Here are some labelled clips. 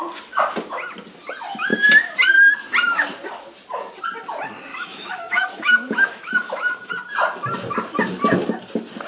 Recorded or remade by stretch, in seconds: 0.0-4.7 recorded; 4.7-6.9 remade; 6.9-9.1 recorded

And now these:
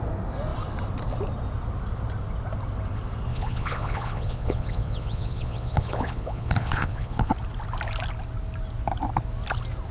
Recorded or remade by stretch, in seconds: 0.0-3.3 recorded; 3.3-7.3 remade; 7.3-9.9 recorded

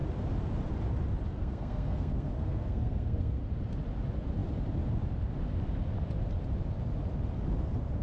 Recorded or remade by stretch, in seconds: 0.0-1.4 recorded; 1.4-3.4 remade; 3.4-8.0 recorded